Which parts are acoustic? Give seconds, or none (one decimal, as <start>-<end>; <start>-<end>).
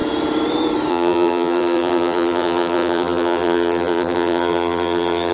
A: 0.0-0.9